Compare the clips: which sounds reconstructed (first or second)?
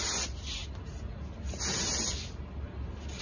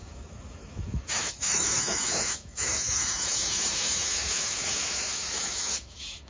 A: second